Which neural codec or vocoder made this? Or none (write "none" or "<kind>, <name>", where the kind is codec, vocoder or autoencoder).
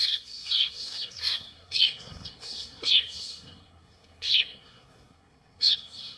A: codec, SNAC